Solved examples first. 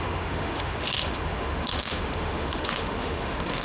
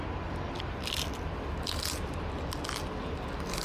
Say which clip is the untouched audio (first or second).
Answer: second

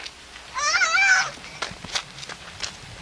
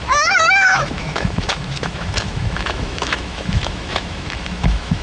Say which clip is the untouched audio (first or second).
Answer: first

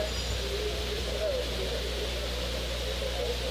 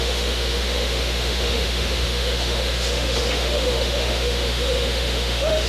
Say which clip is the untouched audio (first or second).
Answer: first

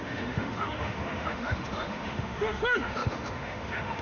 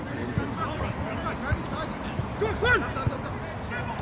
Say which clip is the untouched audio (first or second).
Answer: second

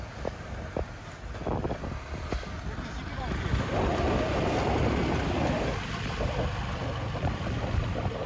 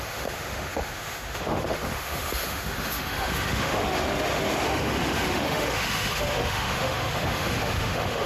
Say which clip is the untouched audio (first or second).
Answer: first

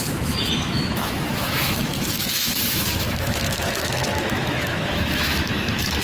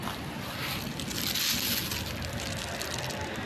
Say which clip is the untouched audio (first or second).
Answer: second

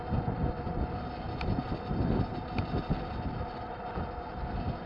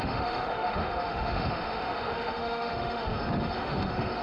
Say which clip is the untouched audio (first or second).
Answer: first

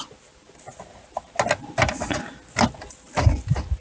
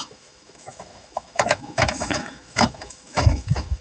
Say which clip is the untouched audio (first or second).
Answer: first